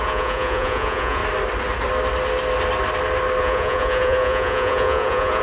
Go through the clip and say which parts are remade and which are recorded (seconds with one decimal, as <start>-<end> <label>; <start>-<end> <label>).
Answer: 0.0-1.2 remade; 1.2-3.4 recorded; 3.4-5.4 remade